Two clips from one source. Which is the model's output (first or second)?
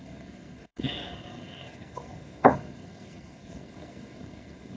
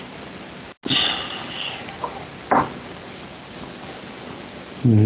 first